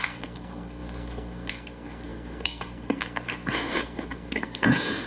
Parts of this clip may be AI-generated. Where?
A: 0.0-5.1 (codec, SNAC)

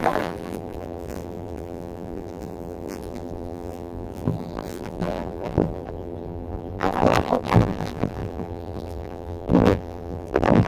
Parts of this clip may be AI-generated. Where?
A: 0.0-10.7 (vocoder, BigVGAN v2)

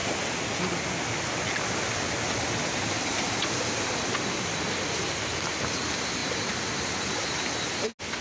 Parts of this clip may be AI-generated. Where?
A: none

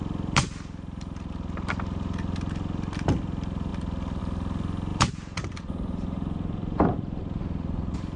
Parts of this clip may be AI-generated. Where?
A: 4.9-7.4 (vocoder, BigVGAN v2)

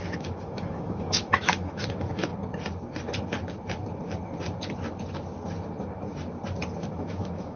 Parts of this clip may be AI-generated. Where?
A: 0.0-2.3 (autoencoder, DAC-VAE); 6.9-7.6

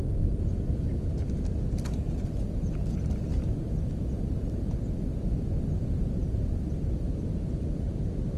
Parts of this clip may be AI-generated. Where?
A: 3.3-4.8 (vocoder, BigVGAN v2)

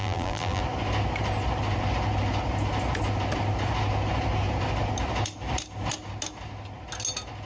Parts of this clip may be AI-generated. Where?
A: 0.0-0.6 (vocoder, BigVGAN v2)

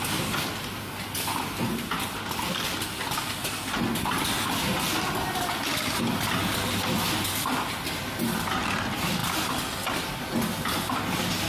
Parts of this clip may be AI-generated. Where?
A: none